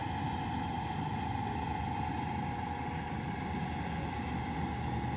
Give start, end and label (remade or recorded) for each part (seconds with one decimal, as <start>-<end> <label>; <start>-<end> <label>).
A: 0.0-5.2 recorded